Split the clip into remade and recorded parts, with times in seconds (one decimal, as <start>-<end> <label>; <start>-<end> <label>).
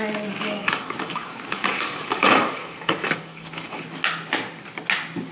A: 0.0-0.6 recorded; 0.6-3.8 remade; 3.8-5.3 recorded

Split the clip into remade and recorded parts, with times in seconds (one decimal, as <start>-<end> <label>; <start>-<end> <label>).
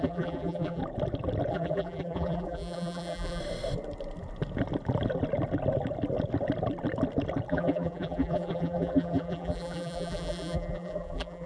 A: 0.0-0.8 remade; 0.8-1.5 recorded; 1.5-3.4 remade; 3.4-7.5 recorded; 7.5-11.5 remade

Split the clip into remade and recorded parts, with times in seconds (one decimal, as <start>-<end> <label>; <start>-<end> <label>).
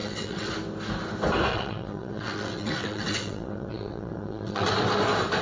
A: 0.0-0.5 remade; 0.5-1.5 recorded; 1.5-4.7 remade; 4.7-5.4 recorded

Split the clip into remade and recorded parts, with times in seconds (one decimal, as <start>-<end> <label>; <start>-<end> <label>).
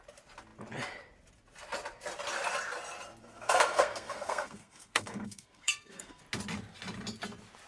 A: 0.0-3.2 recorded; 3.2-6.2 remade; 6.2-7.7 recorded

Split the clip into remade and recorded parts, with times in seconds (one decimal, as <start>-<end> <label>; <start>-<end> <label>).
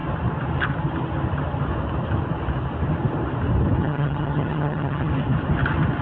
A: 0.0-3.8 recorded; 3.8-5.1 remade; 5.1-6.0 recorded